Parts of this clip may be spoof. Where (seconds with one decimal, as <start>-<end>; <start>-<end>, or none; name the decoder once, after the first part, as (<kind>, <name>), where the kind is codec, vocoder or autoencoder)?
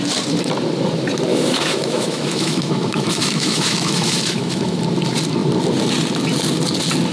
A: 1.3-4.8 (autoencoder, DAC-VAE)